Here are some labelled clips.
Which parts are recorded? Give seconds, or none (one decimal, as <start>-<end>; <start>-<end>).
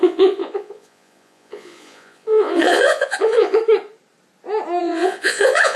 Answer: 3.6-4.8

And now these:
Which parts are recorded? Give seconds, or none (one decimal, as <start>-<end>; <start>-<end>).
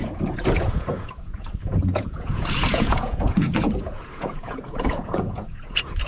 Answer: none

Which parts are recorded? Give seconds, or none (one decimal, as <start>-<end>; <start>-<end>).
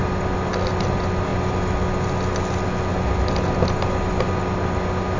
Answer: 0.0-5.2